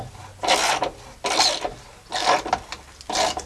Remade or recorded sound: recorded